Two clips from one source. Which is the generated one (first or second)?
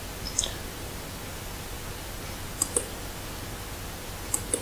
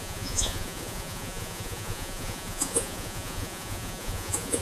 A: second